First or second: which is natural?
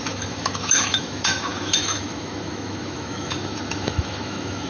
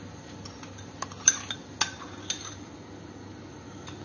second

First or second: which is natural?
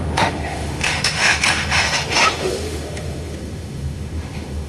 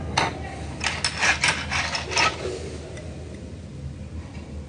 second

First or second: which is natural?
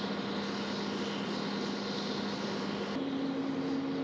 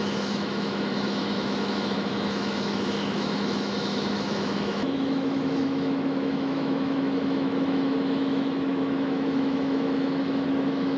first